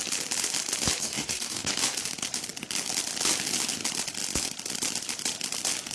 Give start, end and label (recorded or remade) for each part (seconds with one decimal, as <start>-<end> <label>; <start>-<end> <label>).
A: 0.0-1.0 recorded; 1.0-1.7 remade; 1.7-5.9 recorded